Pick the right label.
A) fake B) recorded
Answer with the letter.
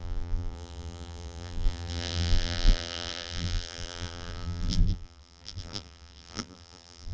A